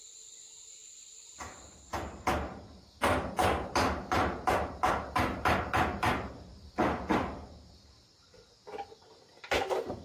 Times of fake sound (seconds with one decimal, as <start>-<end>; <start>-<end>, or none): none